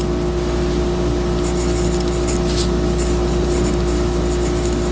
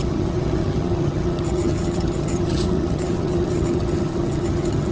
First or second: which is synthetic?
second